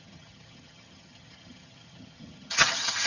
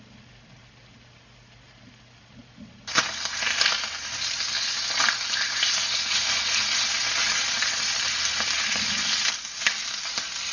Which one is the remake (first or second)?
first